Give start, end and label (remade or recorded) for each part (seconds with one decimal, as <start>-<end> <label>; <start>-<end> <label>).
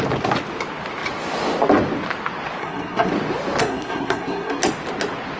0.0-2.6 recorded; 2.6-3.1 remade; 3.1-3.6 recorded; 3.6-4.6 remade; 4.6-5.4 recorded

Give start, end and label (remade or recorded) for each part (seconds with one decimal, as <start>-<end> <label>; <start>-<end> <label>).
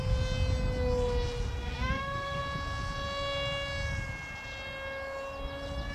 0.0-1.6 recorded; 1.6-2.4 remade; 2.4-5.9 recorded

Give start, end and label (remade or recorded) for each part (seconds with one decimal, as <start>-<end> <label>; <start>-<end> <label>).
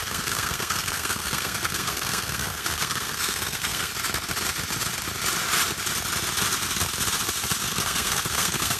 0.0-3.9 remade; 3.9-7.8 recorded; 7.8-8.8 remade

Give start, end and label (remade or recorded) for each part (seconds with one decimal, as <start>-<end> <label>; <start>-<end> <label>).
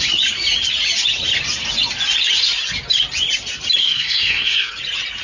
0.0-3.8 recorded; 3.8-4.7 remade; 4.7-5.2 recorded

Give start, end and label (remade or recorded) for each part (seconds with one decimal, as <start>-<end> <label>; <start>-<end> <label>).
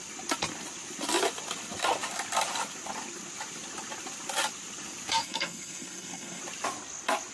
0.0-5.2 recorded; 5.2-6.4 remade; 6.4-7.3 recorded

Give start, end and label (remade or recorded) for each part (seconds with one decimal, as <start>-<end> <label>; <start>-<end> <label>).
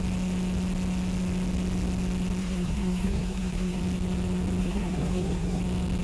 0.0-2.4 recorded; 2.4-3.8 remade; 3.8-4.6 recorded; 4.6-5.6 remade; 5.6-6.0 recorded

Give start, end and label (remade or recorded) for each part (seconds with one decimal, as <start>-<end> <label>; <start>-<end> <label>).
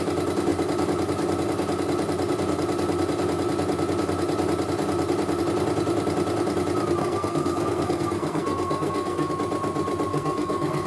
0.0-7.0 recorded; 7.0-9.3 remade; 9.3-10.1 recorded; 10.1-10.9 remade